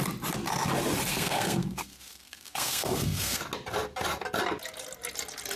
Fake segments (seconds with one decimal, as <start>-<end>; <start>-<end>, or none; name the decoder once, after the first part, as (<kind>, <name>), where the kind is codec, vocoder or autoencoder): 1.1-3.4 (codec, SNAC)